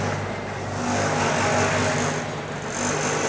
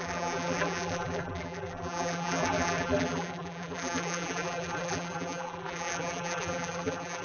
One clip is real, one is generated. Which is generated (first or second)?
second